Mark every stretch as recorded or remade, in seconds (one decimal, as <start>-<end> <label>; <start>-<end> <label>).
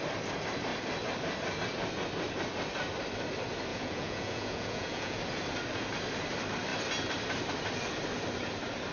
0.0-3.7 recorded; 3.7-5.2 remade; 5.2-8.9 recorded